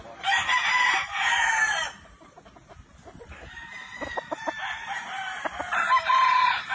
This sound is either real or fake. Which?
fake